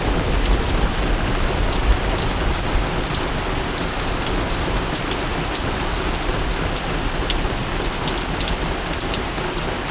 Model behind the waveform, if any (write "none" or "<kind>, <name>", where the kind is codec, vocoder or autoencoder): none